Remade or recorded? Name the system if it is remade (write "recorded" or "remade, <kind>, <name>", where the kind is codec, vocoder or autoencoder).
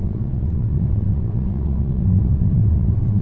remade, vocoder, WaveNeXt